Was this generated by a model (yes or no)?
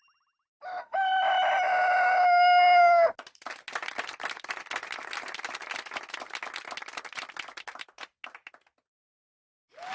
no